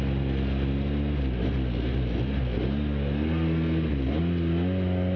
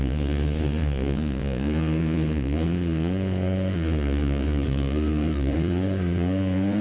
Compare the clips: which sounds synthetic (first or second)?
second